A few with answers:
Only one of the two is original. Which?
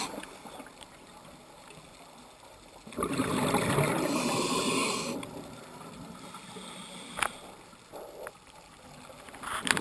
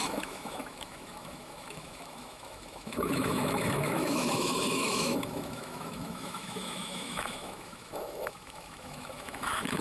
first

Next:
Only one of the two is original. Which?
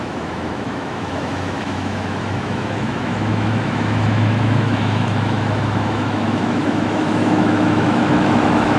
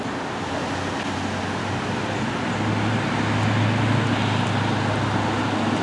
second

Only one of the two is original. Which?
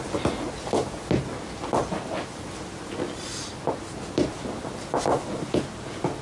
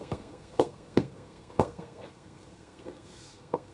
first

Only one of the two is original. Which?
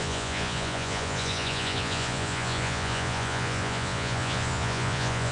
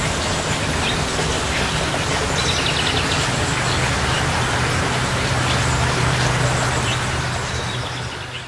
second